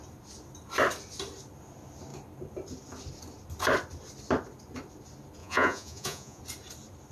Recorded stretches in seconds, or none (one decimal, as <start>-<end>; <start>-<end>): 0.0-5.4; 6.4-7.1